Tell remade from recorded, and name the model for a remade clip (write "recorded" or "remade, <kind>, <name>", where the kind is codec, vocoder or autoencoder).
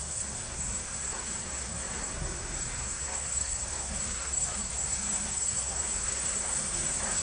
remade, codec, SNAC